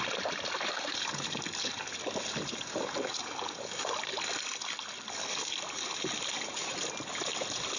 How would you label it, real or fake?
real